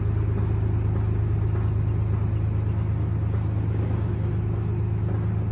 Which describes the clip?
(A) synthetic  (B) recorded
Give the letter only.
B